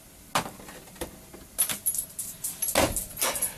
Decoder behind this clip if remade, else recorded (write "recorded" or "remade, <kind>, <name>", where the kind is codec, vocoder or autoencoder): recorded